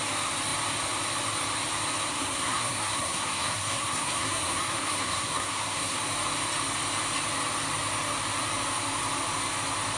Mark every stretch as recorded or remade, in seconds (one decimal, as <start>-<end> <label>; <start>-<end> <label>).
0.0-2.1 recorded; 2.1-6.0 remade; 6.0-10.0 recorded